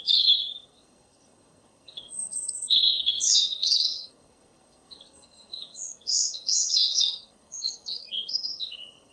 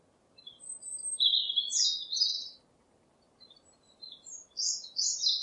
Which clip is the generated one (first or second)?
first